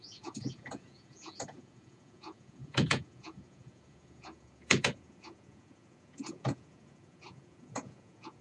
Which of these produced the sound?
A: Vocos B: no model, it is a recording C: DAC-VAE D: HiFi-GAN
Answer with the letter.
A